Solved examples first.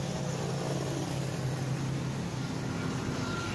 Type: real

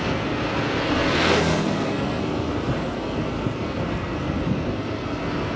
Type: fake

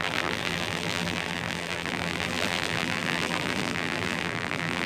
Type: fake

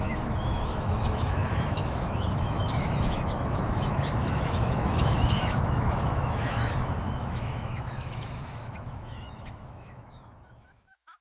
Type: fake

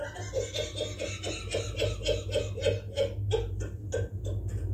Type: real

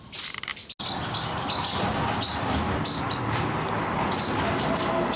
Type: real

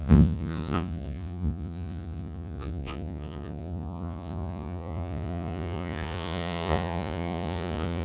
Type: fake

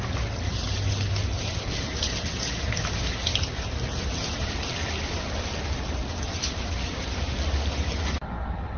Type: real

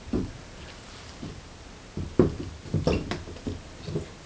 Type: real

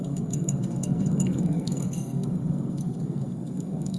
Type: fake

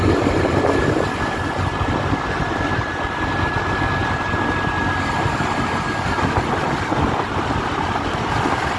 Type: real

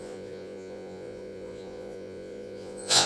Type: fake